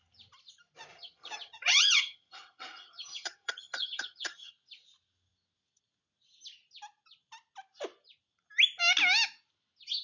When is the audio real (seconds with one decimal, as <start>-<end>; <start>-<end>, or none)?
0.0-0.9; 4.5-10.0